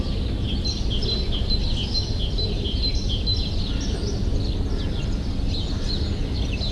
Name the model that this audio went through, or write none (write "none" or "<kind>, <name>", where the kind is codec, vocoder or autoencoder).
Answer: none